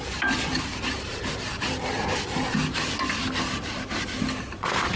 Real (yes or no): yes